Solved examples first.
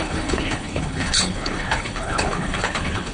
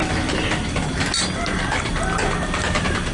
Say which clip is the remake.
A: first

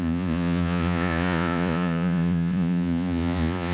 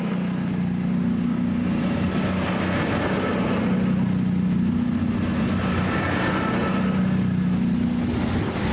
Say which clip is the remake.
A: first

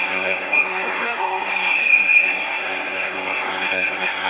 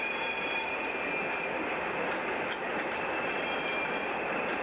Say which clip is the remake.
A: first